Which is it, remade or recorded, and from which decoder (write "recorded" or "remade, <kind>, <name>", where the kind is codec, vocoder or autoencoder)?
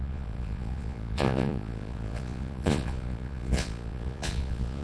remade, vocoder, Vocos